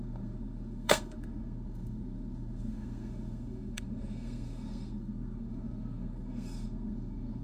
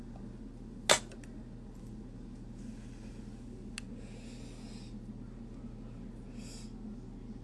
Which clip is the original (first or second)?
second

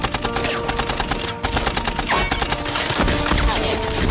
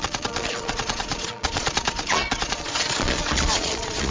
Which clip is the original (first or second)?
first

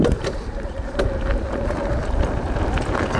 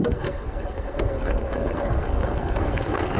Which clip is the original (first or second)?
first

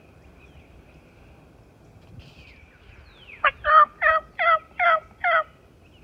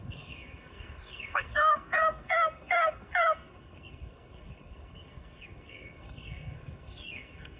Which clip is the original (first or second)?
first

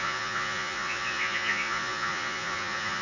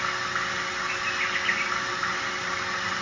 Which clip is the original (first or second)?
second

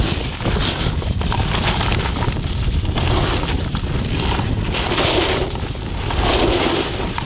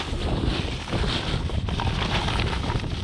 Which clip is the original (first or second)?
first